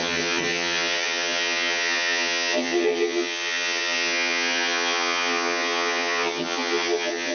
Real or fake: fake